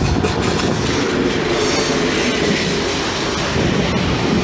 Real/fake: real